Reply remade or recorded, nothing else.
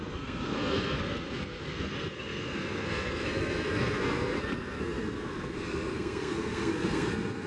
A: remade